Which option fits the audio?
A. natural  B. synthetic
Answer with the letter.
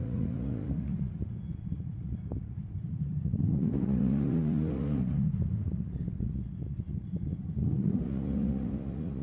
B